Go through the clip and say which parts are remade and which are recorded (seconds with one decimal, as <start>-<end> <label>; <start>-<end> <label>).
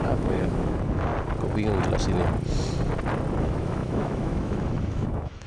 0.0-1.1 remade; 1.1-3.4 recorded; 3.4-5.5 remade